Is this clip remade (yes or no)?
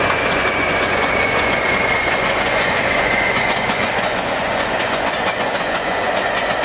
yes